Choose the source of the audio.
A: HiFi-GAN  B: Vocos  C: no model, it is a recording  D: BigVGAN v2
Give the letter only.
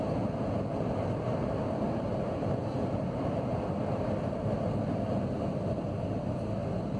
C